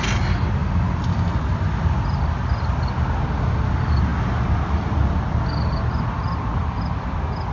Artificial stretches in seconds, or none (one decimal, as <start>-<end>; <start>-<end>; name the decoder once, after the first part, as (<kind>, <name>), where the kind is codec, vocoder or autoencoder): none